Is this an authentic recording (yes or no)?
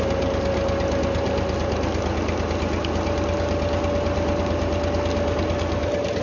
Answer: yes